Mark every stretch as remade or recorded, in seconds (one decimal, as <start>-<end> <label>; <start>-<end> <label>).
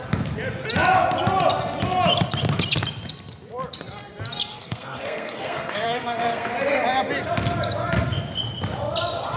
0.0-4.5 recorded; 4.5-6.5 remade; 6.5-9.4 recorded